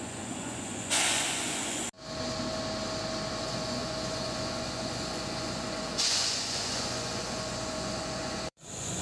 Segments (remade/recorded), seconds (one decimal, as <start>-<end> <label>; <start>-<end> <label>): 0.0-1.8 remade; 1.8-3.4 recorded; 3.4-9.0 remade